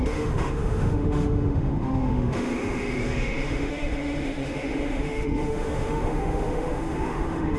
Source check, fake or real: fake